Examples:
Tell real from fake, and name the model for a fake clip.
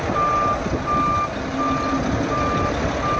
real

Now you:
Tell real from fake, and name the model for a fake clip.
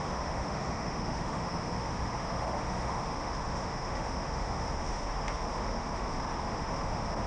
fake, autoencoder, DAC-VAE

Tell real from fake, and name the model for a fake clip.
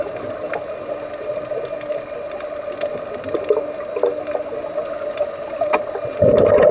real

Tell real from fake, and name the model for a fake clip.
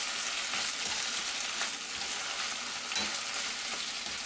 real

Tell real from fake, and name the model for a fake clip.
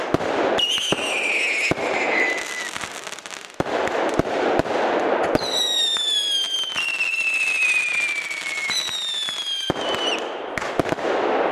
real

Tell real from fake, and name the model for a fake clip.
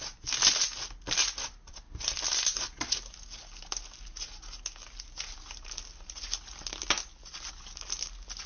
real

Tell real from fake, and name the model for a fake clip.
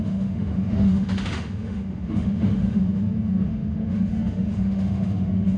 fake, autoencoder, DAC-VAE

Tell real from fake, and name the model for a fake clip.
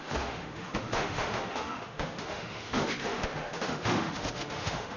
fake, autoencoder, DAC-VAE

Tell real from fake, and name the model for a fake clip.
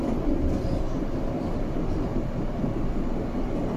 real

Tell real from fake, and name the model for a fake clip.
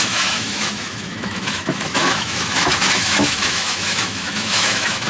fake, autoencoder, DAC-VAE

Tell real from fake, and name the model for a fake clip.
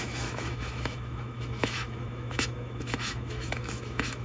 fake, autoencoder, DAC-VAE